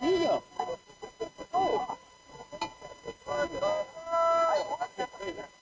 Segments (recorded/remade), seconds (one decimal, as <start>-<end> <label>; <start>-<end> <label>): 0.0-5.6 recorded